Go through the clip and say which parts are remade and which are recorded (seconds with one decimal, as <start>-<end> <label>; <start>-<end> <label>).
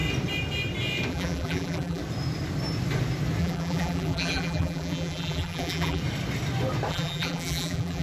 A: 0.0-1.1 recorded; 1.1-2.0 remade; 2.0-3.4 recorded; 3.4-6.0 remade; 6.0-6.9 recorded; 6.9-8.0 remade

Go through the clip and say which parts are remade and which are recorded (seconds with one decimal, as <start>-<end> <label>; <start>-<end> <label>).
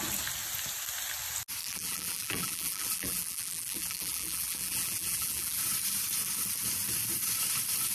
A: 0.0-1.6 recorded; 1.6-5.6 remade; 5.6-7.9 recorded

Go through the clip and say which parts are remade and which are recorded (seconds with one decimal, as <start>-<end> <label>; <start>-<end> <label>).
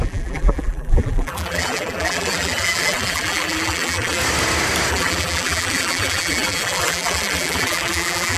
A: 0.0-4.2 remade; 4.2-4.9 recorded; 4.9-8.4 remade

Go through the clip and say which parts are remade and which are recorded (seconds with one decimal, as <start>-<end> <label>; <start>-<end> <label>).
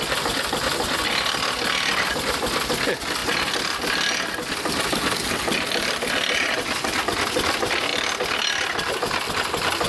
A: 0.0-9.9 recorded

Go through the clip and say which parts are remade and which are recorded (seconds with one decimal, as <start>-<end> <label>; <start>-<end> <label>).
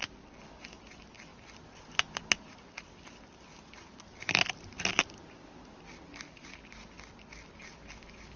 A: 0.0-8.4 recorded